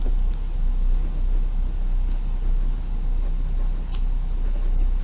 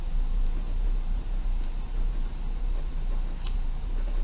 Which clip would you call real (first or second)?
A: first